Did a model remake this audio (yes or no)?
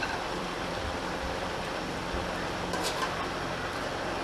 yes